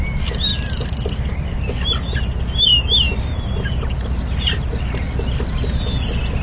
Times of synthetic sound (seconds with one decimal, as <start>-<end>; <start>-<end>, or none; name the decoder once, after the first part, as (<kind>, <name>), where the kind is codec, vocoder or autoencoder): 0.5-1.6 (vocoder, BigVGAN v2)